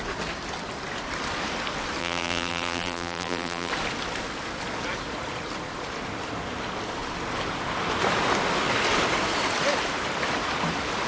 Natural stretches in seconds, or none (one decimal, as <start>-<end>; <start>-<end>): 0.0-2.0; 3.7-11.1